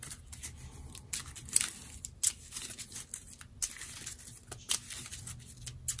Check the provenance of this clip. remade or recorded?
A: recorded